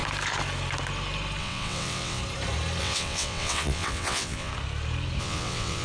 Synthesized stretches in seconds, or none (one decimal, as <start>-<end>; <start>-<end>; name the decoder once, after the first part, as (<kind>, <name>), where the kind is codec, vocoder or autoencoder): 1.4-2.2 (vocoder, WaveNeXt); 2.8-4.5; 5.2-5.8